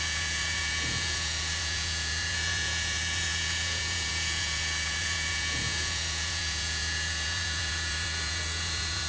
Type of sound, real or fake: fake